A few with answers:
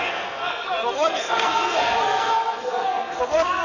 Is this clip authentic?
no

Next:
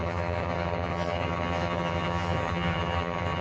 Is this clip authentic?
no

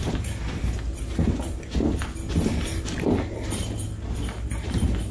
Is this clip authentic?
yes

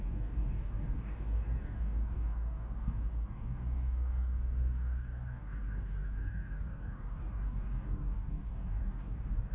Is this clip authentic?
no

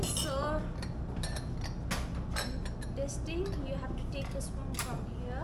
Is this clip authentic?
yes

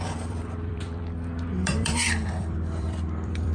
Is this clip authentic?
no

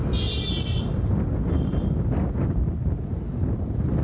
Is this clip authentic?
yes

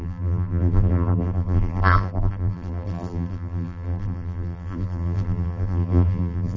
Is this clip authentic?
no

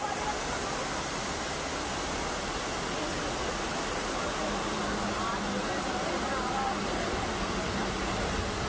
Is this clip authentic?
yes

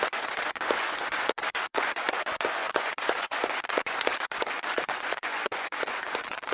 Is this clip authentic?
no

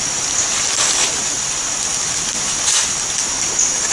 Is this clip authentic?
yes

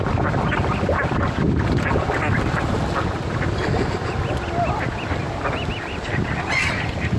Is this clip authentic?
yes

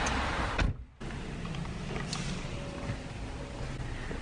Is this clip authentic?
yes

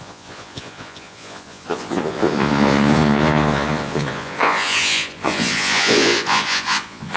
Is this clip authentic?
no